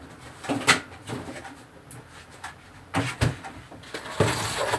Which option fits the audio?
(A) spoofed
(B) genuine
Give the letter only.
B